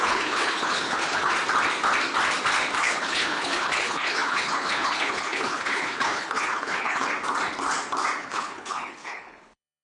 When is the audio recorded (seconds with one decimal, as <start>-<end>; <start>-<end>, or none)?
1.3-2.8; 7.1-8.2